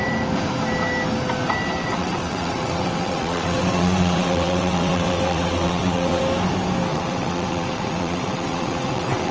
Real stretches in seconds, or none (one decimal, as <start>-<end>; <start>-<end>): 0.0-1.8; 6.2-6.9